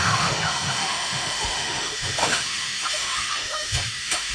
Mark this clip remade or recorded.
remade